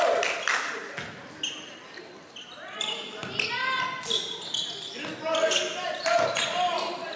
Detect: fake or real real